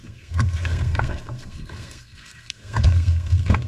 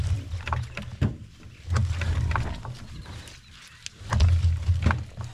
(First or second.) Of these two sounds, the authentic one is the second